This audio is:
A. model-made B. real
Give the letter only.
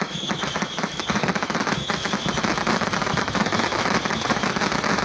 A